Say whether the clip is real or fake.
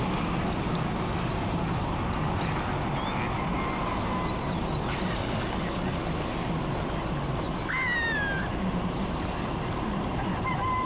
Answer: real